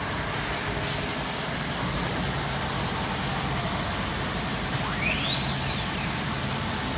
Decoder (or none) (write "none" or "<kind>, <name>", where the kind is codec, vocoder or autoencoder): none